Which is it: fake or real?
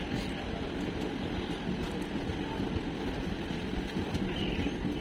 real